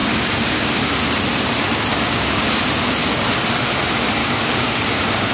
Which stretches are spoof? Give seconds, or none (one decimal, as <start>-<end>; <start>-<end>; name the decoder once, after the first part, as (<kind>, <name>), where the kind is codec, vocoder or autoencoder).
0.0-0.8 (codec, DAC); 1.9-2.6; 4.2-5.3